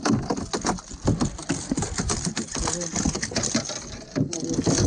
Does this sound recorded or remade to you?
recorded